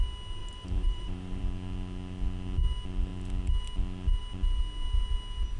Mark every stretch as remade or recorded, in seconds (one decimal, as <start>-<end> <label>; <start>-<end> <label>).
0.0-0.4 recorded; 0.4-1.4 remade; 1.4-5.6 recorded